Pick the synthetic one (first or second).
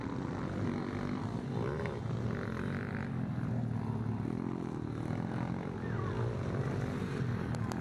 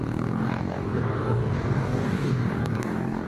second